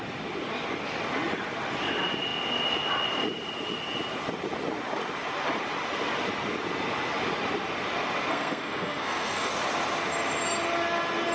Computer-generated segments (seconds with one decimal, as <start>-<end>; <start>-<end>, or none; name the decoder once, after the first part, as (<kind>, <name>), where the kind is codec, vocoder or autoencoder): 8.3-9.5 (codec, SNAC)